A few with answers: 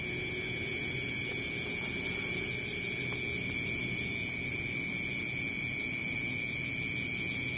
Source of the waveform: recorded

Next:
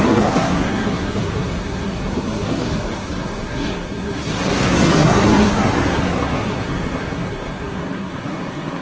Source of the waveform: remade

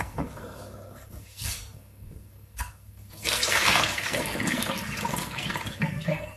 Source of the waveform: remade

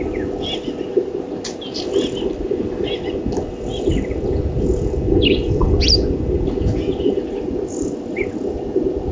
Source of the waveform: recorded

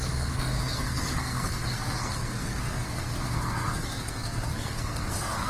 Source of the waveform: remade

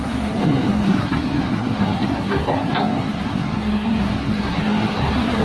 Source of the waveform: remade